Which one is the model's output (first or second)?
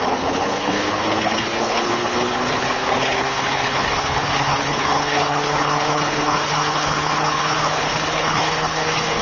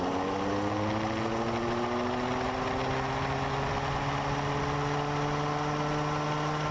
first